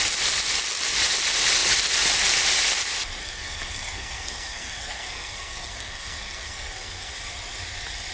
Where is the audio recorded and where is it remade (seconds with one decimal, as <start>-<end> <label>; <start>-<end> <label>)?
0.0-3.2 recorded; 3.2-7.1 remade; 7.1-8.1 recorded